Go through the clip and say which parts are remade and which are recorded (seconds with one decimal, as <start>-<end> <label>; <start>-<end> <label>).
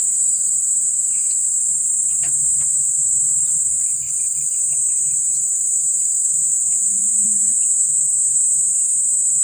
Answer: 0.0-6.4 recorded; 6.4-8.0 remade; 8.0-9.4 recorded